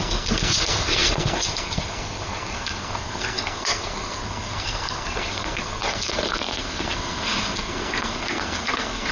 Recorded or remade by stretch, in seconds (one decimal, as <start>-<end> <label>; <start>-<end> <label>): 0.0-9.1 remade